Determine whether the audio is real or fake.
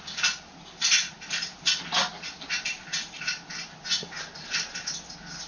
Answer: real